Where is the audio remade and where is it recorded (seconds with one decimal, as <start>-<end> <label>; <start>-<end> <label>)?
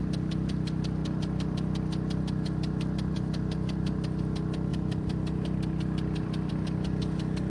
0.0-4.7 recorded; 4.7-6.5 remade; 6.5-7.5 recorded